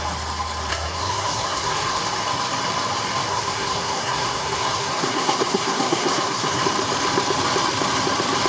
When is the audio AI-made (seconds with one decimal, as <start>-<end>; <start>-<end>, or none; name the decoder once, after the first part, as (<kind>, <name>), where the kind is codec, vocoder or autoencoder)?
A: 0.7-2.0 (codec, SNAC); 3.3-6.6